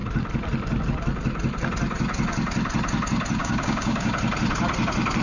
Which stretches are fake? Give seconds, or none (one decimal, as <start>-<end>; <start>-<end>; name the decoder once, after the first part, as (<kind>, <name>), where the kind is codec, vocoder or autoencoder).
3.4-4.1 (codec, DAC)